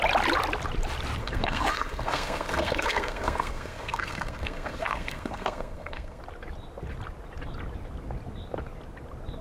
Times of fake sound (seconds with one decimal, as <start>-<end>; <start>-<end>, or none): 1.2-6.2